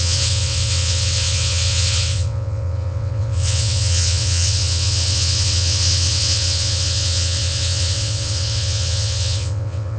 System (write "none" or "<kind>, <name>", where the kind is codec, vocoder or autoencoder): vocoder, WaveNeXt